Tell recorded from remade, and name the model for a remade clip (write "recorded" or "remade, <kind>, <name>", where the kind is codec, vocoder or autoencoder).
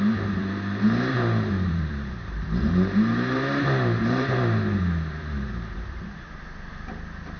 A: remade, vocoder, BigVGAN v2